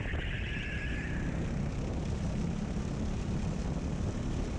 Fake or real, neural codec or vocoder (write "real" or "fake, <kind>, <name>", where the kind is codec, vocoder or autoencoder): real